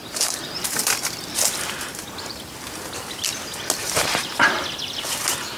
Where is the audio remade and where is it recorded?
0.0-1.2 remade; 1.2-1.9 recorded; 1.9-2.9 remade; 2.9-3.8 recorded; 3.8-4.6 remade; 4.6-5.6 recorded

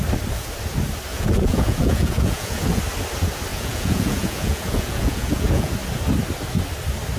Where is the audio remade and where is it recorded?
0.0-1.1 recorded; 1.1-2.8 remade; 2.8-3.5 recorded; 3.5-5.7 remade; 5.7-7.2 recorded

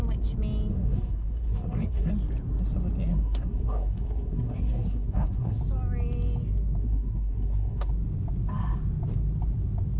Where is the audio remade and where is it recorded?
0.0-0.7 recorded; 0.7-2.1 remade; 2.1-3.1 recorded; 3.1-5.6 remade; 5.6-6.8 recorded; 6.8-7.9 remade; 7.9-10.0 recorded